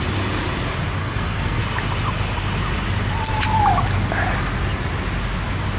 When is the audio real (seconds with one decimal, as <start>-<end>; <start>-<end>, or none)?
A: 0.0-1.0; 1.6-5.8

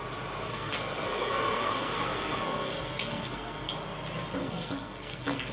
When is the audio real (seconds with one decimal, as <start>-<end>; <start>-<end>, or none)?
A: 0.0-0.5; 3.7-4.4

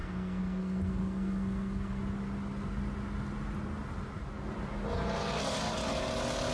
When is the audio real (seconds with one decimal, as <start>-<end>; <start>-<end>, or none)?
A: 2.0-6.5

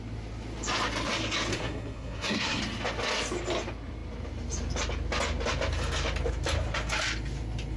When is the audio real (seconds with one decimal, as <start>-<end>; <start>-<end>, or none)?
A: 0.0-1.5; 2.6-7.8

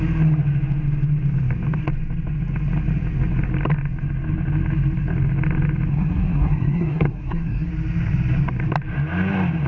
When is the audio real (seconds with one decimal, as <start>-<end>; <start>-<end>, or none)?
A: 0.0-5.9; 7.7-9.7